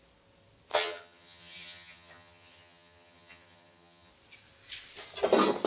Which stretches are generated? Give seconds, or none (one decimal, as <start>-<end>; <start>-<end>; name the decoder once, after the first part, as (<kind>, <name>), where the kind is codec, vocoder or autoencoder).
0.7-4.1 (vocoder, HiFi-GAN)